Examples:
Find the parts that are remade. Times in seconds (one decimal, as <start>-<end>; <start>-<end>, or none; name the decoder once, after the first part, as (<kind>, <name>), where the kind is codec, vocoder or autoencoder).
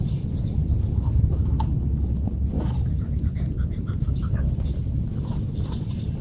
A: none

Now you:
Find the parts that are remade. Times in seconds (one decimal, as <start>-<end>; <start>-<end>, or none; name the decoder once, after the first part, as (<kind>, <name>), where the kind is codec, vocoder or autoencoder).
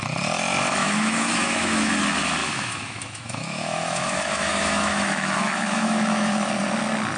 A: 0.8-1.9 (autoencoder, DAC-VAE); 2.4-6.5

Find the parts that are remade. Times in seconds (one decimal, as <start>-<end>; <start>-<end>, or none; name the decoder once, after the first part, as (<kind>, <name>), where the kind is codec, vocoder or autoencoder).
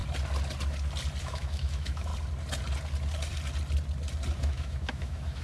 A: 1.2-2.1 (autoencoder, DAC-VAE); 4.4-5.4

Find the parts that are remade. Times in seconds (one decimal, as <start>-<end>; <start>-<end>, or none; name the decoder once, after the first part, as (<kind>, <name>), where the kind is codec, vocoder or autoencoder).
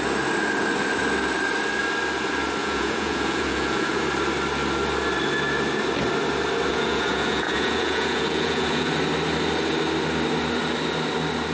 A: 2.6-4.0 (vocoder, Vocos); 6.7-8.9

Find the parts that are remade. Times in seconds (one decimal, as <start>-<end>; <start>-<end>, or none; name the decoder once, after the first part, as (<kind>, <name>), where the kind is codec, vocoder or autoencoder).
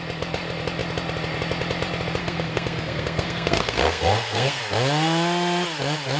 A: 2.2-4.6 (codec, SNAC)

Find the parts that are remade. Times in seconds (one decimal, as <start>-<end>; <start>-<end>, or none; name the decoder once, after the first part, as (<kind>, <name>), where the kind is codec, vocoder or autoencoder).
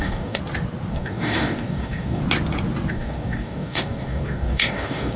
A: 0.0-0.4 (codec, DAC); 0.9-2.2; 2.9-5.2